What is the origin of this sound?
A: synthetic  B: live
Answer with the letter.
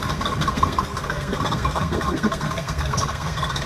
A